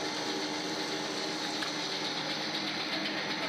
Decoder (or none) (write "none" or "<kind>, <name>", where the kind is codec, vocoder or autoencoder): none